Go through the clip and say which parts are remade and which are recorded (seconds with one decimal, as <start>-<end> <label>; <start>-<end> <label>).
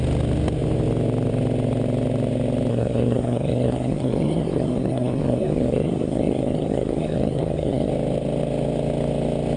0.0-2.7 recorded; 2.7-7.9 remade; 7.9-9.6 recorded